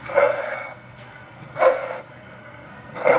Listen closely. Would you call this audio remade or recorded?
remade